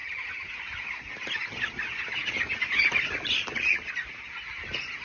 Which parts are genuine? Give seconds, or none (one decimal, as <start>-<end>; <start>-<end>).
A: 0.5-5.0